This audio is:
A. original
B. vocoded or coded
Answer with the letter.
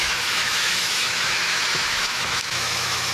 B